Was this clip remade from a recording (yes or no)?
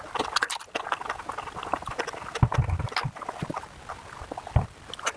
no